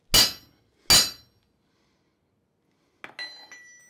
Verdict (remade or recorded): recorded